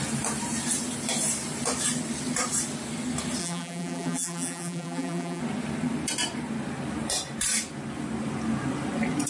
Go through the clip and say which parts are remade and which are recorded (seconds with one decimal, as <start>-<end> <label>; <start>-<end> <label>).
0.0-3.4 recorded; 3.4-5.4 remade; 5.4-9.3 recorded